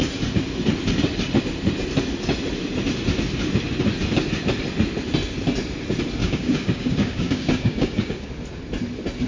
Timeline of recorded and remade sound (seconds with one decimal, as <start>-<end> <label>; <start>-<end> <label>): 0.0-6.2 recorded; 6.2-8.3 remade; 8.3-9.3 recorded